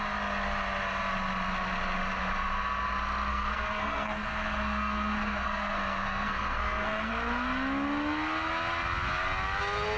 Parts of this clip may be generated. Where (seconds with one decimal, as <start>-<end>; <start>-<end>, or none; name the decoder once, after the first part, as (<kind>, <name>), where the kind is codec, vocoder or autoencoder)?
3.3-7.1 (codec, SNAC)

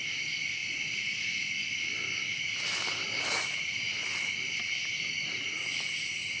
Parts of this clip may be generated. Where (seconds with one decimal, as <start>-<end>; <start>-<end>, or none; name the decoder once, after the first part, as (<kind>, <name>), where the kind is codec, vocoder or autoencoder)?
0.6-2.8 (vocoder, BigVGAN v2)

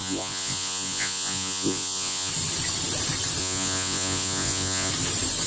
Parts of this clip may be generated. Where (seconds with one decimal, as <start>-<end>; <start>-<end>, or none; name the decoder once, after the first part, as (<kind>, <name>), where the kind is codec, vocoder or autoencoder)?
0.0-2.3 (vocoder, Vocos); 3.4-4.9

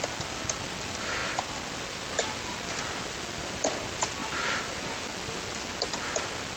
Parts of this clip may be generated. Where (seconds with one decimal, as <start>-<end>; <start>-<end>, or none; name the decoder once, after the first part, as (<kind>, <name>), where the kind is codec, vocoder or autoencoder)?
none

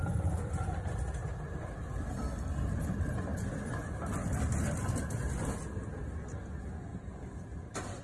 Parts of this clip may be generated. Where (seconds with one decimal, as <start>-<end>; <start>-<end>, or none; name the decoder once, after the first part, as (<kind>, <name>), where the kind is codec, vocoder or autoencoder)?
0.0-1.0 (vocoder, BigVGAN v2); 6.9-8.0

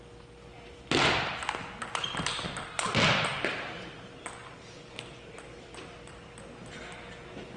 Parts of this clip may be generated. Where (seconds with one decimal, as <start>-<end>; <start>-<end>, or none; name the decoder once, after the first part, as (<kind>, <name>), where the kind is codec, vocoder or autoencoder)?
none